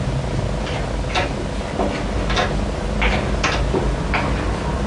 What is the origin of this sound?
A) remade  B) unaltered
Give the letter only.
B